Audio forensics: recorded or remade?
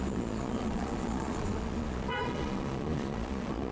remade